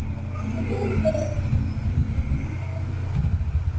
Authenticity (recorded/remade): recorded